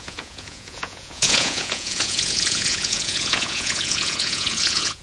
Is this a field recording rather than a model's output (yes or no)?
no